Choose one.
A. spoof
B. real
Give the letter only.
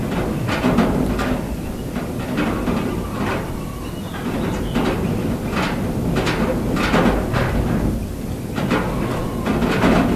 B